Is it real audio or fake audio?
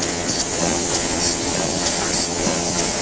fake